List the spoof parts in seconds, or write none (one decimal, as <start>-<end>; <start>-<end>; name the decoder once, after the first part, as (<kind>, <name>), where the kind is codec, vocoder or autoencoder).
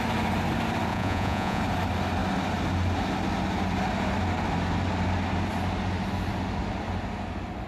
0.9-1.6 (vocoder, Vocos)